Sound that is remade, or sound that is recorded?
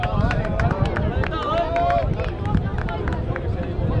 recorded